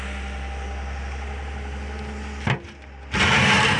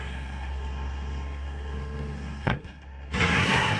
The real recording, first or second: first